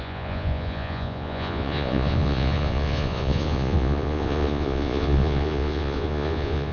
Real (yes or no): no